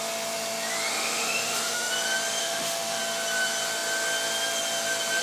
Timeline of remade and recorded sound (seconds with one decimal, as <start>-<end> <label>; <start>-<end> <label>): 0.0-0.9 recorded; 0.9-1.9 remade; 1.9-2.4 recorded; 2.4-3.0 remade; 3.0-5.2 recorded